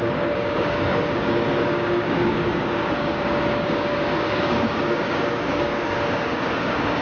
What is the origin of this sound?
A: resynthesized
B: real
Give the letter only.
A